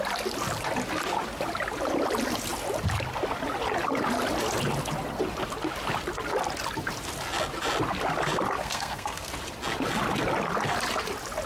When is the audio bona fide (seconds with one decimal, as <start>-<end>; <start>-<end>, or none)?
0.0-8.6; 9.3-11.5